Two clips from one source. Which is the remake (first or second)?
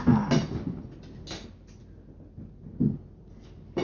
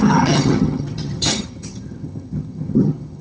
second